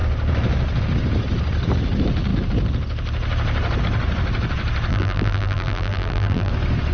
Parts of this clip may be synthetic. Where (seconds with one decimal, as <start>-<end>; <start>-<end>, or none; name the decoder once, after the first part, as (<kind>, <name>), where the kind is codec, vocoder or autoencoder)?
4.9-6.5 (vocoder, BigVGAN v2)